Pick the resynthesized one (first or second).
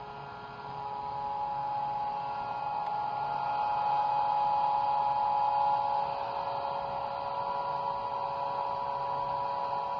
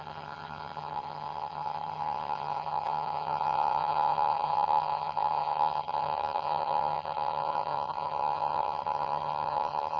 second